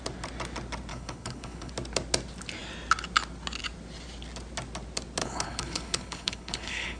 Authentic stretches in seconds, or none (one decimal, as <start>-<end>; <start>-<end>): 0.0-0.9; 1.7-5.2